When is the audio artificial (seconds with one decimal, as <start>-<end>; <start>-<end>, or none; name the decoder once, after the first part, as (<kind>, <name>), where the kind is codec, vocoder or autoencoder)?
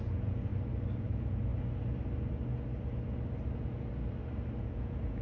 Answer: 0.0-0.5 (vocoder, Vocos); 1.0-1.5; 4.6-5.2